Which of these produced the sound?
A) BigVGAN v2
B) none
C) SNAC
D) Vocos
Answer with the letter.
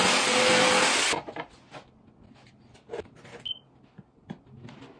B